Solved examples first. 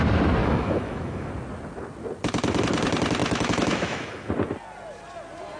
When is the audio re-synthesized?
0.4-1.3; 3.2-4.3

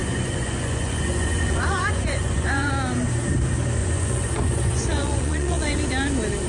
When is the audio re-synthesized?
0.0-2.7; 3.8-5.8

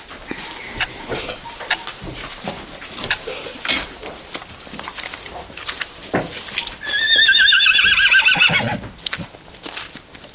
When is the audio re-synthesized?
none